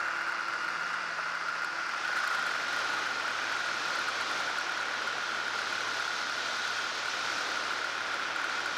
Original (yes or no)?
yes